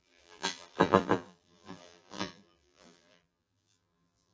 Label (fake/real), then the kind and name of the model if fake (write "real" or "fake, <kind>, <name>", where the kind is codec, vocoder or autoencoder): fake, vocoder, BigVGAN v2